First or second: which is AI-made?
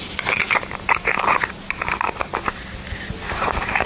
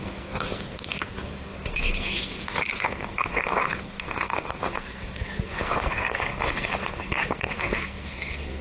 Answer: second